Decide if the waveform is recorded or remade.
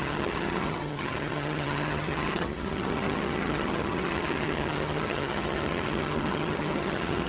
remade